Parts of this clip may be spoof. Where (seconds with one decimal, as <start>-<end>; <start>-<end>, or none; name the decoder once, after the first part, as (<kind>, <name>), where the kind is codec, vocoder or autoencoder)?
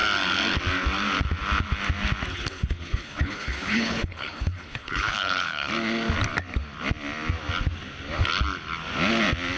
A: 2.3-5.7 (codec, HILCodec)